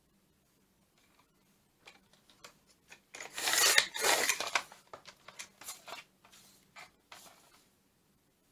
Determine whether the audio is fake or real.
real